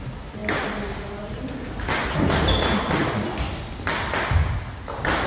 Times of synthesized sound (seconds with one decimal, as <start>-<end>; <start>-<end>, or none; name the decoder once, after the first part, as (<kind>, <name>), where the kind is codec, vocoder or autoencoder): 3.0-3.6 (vocoder, BigVGAN v2)